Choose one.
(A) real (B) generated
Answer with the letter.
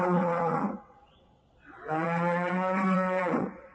B